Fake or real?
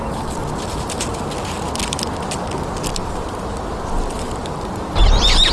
real